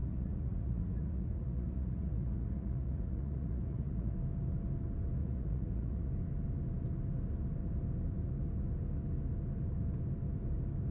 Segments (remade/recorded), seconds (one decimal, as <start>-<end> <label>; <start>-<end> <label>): 0.0-4.1 remade; 4.1-5.2 recorded; 5.2-6.1 remade; 6.1-10.9 recorded